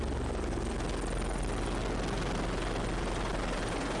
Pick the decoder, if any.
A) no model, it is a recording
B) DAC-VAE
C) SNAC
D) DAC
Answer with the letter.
A